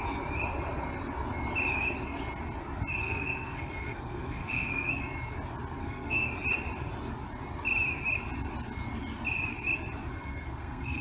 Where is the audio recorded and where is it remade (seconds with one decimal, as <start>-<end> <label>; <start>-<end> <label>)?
0.0-3.0 recorded; 3.0-4.9 remade; 4.9-5.8 recorded; 5.8-6.3 remade; 6.3-10.1 recorded; 10.1-11.0 remade